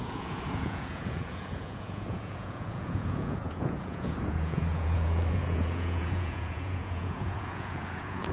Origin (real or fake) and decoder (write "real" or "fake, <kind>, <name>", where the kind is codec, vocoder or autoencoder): fake, vocoder, Vocos